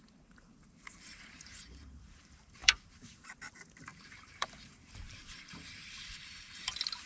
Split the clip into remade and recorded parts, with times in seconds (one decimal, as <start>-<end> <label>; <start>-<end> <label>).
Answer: 0.0-7.1 remade